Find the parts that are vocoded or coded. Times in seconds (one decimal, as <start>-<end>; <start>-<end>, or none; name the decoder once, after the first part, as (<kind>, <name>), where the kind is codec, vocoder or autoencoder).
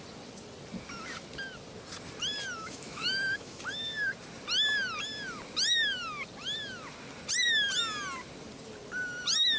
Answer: 2.6-3.6 (autoencoder, DAC-VAE)